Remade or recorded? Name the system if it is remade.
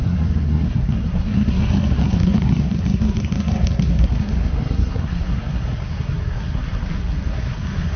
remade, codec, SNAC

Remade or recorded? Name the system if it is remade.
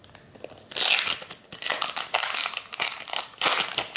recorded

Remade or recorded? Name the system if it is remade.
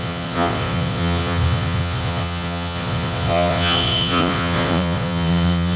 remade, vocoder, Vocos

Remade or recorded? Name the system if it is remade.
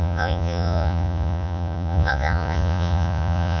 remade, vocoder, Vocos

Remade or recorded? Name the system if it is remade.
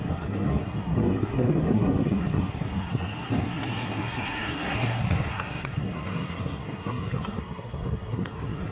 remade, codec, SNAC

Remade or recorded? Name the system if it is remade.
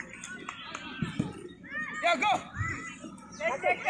recorded